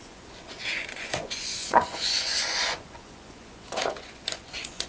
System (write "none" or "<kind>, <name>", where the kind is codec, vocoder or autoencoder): vocoder, Vocos